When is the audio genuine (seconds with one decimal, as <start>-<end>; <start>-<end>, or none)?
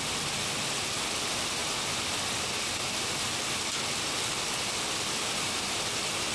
0.0-6.3